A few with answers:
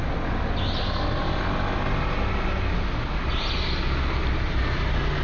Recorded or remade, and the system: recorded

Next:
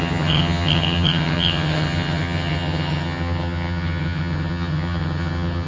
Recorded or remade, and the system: remade, vocoder, HiFi-GAN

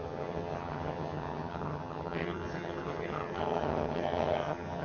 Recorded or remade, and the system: remade, vocoder, HiFi-GAN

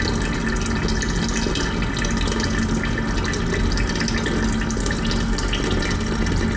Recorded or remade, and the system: recorded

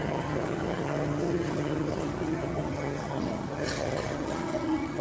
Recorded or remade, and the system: remade, vocoder, HiFi-GAN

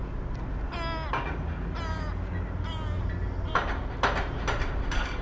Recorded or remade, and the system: recorded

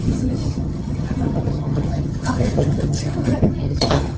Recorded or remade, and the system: remade, vocoder, HiFi-GAN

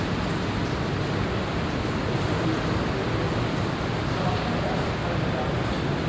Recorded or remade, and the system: recorded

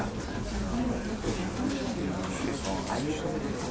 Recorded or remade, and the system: recorded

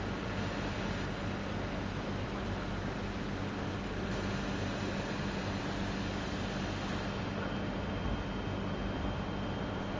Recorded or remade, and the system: recorded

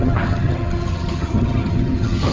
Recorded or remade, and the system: remade, vocoder, HiFi-GAN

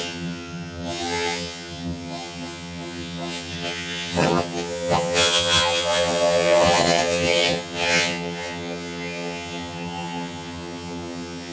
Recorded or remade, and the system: remade, vocoder, HiFi-GAN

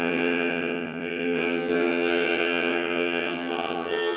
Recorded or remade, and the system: remade, vocoder, HiFi-GAN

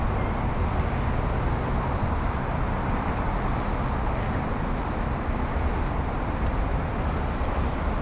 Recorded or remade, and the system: recorded